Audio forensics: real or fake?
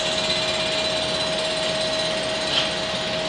real